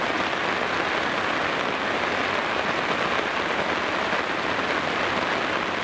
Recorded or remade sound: recorded